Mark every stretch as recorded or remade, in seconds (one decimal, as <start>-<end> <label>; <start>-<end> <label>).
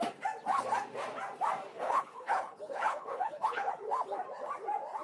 0.0-1.7 recorded; 1.7-3.7 remade; 3.7-5.0 recorded